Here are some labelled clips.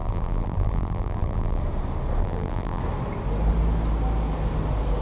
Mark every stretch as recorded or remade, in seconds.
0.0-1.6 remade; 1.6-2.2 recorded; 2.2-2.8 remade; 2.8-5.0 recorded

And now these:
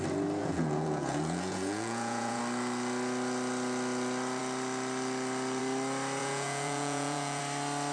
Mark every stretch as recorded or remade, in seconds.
0.0-0.4 recorded; 0.4-2.4 remade; 2.4-6.2 recorded; 6.2-7.4 remade; 7.4-7.9 recorded

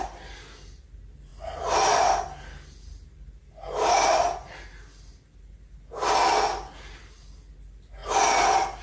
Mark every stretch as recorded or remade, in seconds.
0.0-8.8 recorded